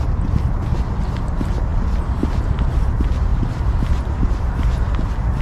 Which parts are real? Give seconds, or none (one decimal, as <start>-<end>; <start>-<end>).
0.0-3.3; 4.4-5.4